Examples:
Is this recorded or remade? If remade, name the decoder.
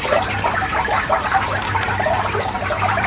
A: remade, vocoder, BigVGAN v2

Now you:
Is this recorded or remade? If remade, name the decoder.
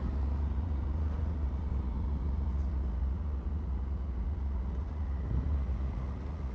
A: remade, vocoder, Vocos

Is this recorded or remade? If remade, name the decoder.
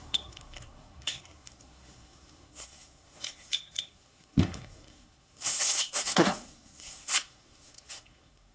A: remade, codec, SNAC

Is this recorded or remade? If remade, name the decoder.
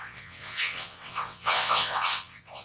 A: remade, vocoder, WaveNeXt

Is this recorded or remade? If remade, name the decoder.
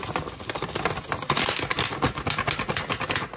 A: recorded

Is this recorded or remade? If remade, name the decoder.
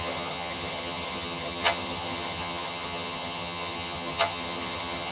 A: remade, vocoder, HiFi-GAN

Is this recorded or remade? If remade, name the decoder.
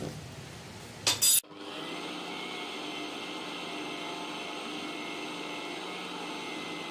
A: recorded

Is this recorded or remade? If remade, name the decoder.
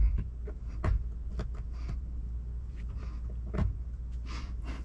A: recorded